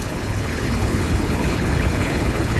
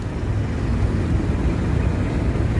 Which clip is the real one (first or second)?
second